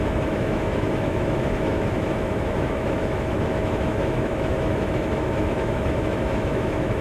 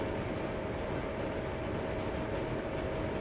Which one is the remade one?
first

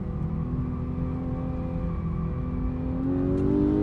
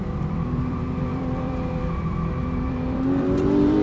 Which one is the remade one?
second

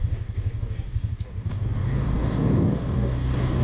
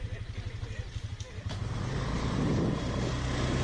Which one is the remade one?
first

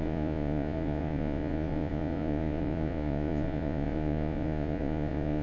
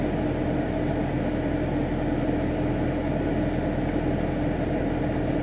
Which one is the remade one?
first